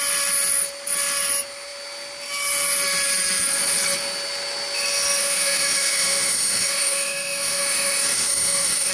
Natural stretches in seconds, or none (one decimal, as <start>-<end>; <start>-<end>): 0.0-5.2